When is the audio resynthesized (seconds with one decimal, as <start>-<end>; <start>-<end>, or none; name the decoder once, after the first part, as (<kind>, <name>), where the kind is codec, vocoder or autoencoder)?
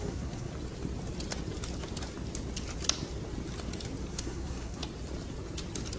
0.0-0.5 (codec, SNAC); 4.1-4.8